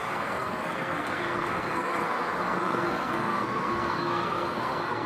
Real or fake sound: fake